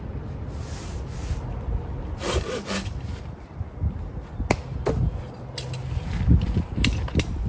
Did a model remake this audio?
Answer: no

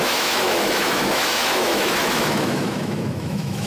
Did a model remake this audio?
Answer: yes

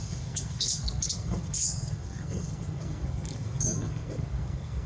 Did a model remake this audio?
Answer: yes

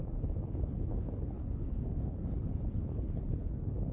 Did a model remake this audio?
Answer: yes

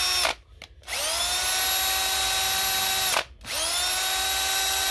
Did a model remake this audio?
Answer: no